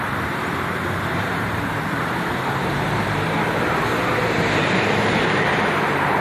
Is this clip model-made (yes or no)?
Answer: yes